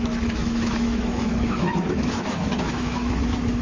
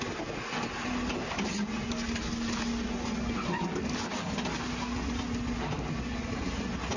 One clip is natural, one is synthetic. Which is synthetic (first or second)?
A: first